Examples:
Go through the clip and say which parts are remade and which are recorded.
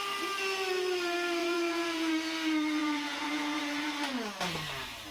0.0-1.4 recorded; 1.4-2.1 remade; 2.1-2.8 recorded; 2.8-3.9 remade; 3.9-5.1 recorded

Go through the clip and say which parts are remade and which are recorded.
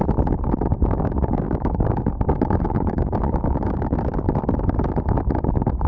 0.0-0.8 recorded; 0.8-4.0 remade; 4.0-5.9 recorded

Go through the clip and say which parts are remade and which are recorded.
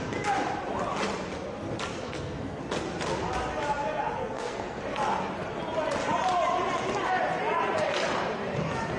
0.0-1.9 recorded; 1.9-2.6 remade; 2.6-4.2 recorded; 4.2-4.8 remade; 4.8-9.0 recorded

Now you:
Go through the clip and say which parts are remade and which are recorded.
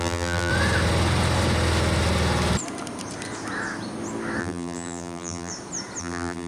0.0-0.5 remade; 0.5-4.4 recorded; 4.4-5.5 remade; 5.5-6.0 recorded; 6.0-6.5 remade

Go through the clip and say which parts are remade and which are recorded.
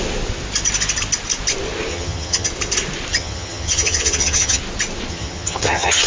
0.0-1.9 recorded; 1.9-2.5 remade; 2.5-3.1 recorded; 3.1-4.6 remade; 4.6-5.1 recorded; 5.1-6.1 remade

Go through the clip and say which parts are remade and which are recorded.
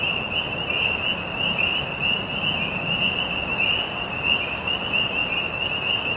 0.0-6.2 recorded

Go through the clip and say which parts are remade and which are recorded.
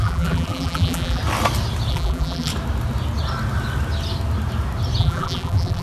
0.0-1.2 remade; 1.2-1.9 recorded; 1.9-2.5 remade; 2.5-5.0 recorded; 5.0-5.8 remade